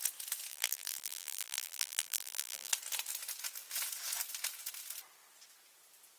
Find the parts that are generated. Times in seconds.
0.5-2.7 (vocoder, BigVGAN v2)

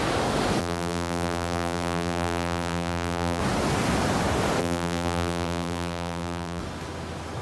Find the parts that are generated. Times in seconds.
0.6-3.4 (vocoder, BigVGAN v2); 4.6-6.6